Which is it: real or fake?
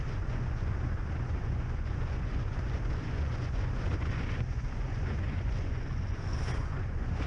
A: fake